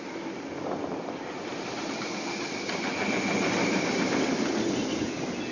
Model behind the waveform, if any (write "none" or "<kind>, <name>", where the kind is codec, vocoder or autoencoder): none